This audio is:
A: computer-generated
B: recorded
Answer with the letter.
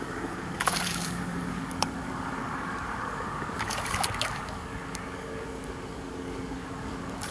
A